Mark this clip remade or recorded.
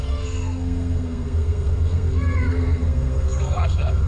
remade